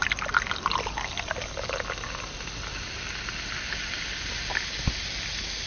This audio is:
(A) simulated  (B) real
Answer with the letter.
B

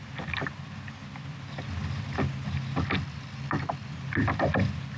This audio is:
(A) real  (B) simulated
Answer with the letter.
A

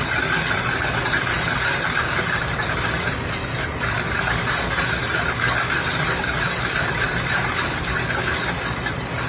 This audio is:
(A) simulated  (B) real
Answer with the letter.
B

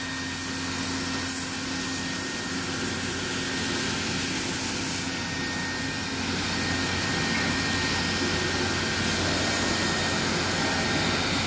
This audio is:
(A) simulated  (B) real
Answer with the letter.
B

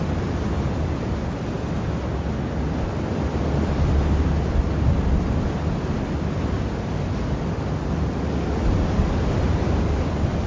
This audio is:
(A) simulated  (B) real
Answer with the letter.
B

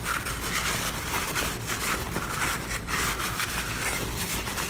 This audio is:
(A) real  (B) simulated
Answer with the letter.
A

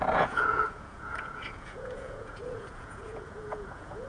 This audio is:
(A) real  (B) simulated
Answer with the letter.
B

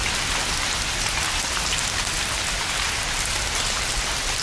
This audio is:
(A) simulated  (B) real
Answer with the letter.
B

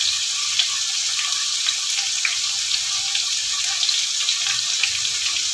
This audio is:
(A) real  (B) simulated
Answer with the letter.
A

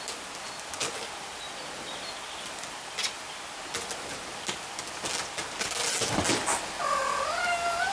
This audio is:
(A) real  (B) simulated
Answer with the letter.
A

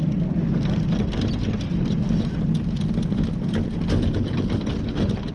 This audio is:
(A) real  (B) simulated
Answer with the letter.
A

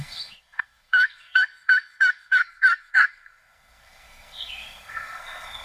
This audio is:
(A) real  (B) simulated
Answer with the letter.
B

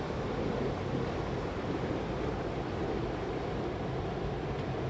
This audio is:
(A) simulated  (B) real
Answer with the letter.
B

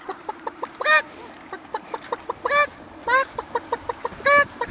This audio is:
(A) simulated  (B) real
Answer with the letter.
B